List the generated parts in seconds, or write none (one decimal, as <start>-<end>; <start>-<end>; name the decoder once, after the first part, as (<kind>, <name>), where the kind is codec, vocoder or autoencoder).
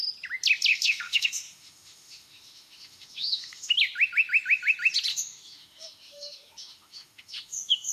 0.7-3.7 (autoencoder, DAC-VAE); 5.1-7.9